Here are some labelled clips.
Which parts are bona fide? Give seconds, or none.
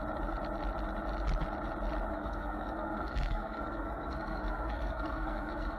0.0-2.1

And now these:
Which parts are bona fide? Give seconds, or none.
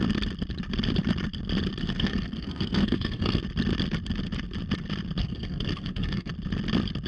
0.0-1.8; 3.4-5.2; 6.3-7.1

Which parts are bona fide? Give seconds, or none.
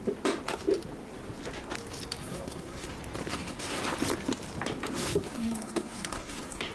0.0-2.2; 2.9-3.3; 3.8-4.9